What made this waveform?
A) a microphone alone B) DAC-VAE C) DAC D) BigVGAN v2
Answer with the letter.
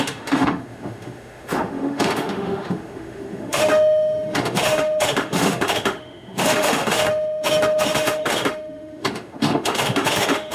B